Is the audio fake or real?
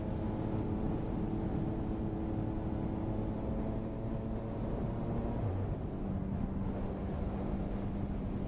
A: real